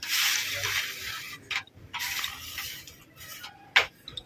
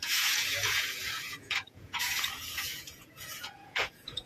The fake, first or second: second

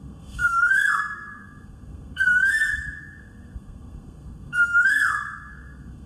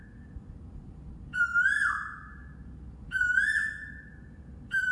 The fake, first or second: first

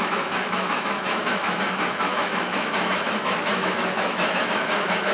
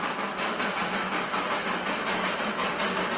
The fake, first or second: first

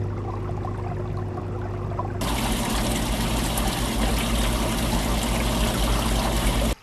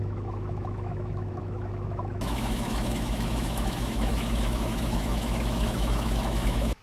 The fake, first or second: second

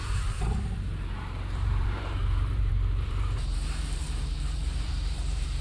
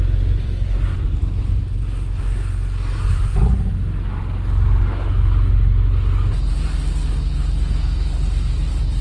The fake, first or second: first